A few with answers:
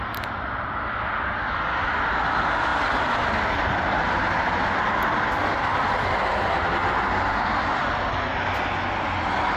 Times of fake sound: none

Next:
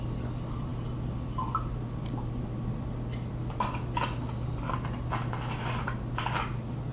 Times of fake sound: 0.7-3.3 (vocoder, BigVGAN v2)